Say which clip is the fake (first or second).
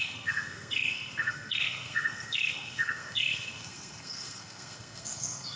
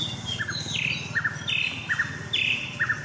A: first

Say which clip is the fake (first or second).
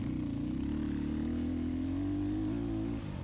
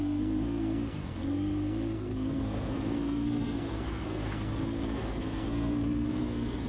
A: second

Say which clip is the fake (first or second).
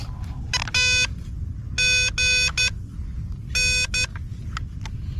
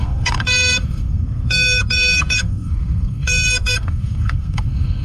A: second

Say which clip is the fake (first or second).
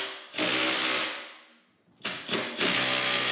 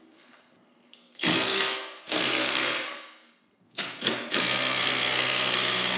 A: second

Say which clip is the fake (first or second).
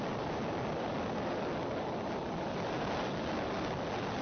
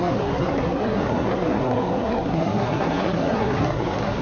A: second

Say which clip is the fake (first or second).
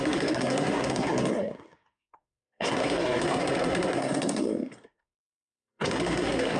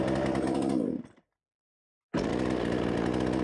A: first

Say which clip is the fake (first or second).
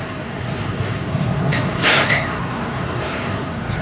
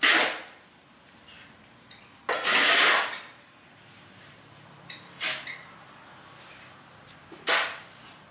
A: first